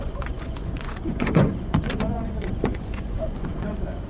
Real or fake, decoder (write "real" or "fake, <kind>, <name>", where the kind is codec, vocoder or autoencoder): fake, vocoder, Vocos